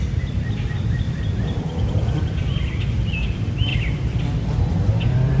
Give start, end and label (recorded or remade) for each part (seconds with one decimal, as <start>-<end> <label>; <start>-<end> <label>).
0.0-3.7 recorded; 3.7-4.2 remade; 4.2-5.4 recorded